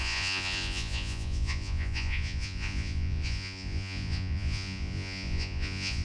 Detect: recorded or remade remade